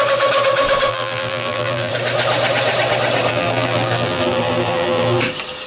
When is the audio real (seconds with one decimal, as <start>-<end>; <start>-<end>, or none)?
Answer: 0.0-0.9; 1.9-3.3; 5.2-5.7